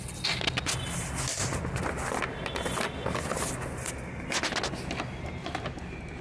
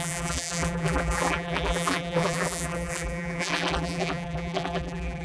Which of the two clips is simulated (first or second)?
second